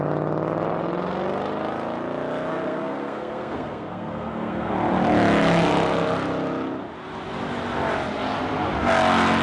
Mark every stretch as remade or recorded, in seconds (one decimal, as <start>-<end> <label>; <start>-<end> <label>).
0.0-2.5 recorded; 2.5-4.7 remade; 4.7-9.4 recorded